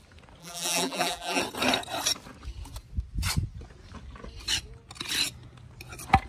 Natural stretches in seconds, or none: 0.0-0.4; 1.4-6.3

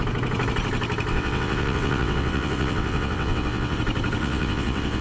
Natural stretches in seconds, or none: 0.0-1.1; 3.8-4.2

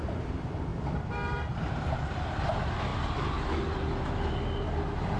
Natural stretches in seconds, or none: 0.0-0.7; 1.7-2.9; 3.5-5.2

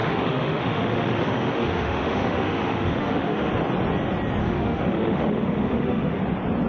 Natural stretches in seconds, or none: 3.5-4.4; 6.2-6.7